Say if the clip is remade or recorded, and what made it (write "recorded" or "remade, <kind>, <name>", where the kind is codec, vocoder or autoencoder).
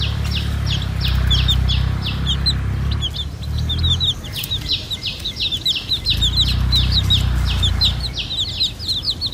recorded